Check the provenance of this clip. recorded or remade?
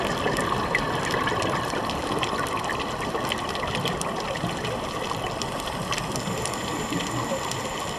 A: recorded